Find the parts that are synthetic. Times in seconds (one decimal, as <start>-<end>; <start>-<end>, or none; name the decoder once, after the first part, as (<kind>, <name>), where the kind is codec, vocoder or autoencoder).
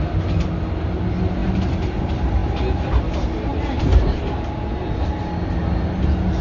1.4-2.0 (vocoder, BigVGAN v2); 3.5-4.9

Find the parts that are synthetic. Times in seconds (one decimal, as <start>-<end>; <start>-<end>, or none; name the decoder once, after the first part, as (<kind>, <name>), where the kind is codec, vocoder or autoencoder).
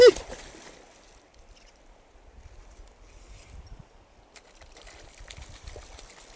none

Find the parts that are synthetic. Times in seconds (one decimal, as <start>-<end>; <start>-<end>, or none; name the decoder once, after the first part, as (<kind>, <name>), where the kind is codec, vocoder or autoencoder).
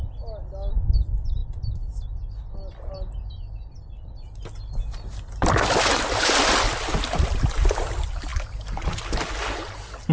none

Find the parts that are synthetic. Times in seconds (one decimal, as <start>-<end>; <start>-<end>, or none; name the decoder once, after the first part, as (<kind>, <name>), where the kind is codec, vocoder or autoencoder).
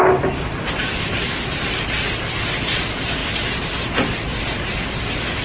none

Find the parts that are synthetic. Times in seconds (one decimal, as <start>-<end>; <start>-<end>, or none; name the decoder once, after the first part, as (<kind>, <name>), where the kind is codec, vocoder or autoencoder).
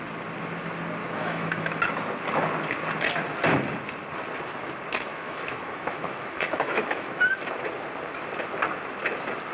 1.0-1.9 (autoencoder, DAC-VAE); 5.1-7.2